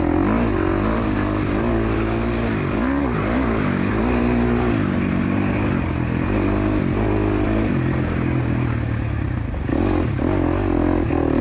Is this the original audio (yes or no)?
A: yes